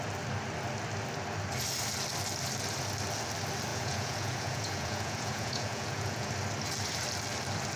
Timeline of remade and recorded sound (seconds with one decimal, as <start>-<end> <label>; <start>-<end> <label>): 0.0-3.7 recorded; 3.7-6.3 remade; 6.3-7.8 recorded